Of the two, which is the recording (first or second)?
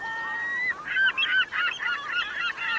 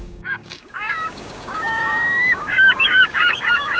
first